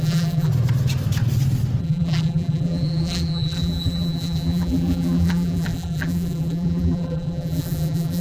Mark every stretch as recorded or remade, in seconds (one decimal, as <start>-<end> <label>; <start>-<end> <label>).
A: 0.0-0.5 remade; 0.5-1.8 recorded; 1.8-8.2 remade